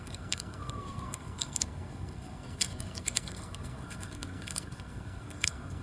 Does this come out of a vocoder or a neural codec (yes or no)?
yes